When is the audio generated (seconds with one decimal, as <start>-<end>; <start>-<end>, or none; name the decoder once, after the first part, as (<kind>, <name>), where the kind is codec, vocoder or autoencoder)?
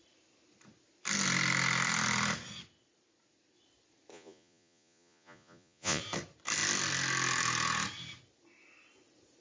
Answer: 4.1-6.0 (vocoder, Vocos)